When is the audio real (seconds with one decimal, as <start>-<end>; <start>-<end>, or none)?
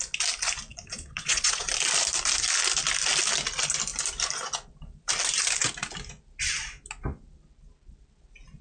0.0-0.7; 1.7-8.6